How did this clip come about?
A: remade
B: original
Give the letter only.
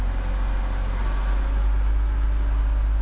B